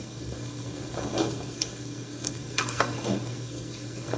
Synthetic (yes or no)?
yes